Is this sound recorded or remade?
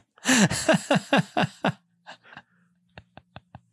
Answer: recorded